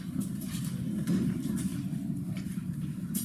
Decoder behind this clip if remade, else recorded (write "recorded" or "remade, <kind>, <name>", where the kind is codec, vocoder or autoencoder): remade, vocoder, BigVGAN v2